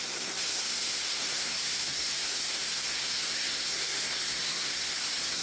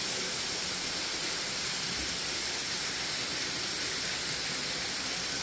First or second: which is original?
second